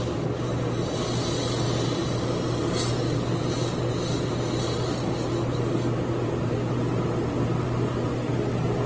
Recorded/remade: recorded